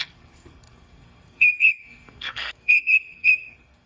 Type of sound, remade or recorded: remade